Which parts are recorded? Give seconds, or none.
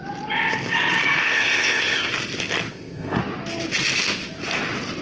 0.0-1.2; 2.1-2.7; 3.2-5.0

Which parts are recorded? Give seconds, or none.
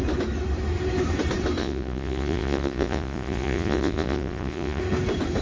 0.0-1.6; 4.8-5.4